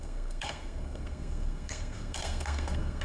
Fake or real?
fake